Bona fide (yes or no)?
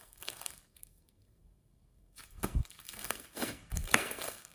no